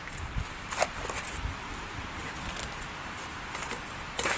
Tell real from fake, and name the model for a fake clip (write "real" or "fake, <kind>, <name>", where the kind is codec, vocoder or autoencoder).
real